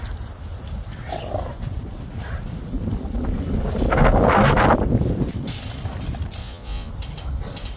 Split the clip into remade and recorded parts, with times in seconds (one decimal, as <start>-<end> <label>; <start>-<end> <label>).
0.0-6.4 recorded; 6.4-6.9 remade; 6.9-7.8 recorded